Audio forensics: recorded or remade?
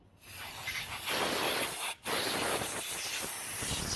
recorded